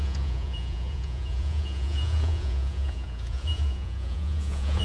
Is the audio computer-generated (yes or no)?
yes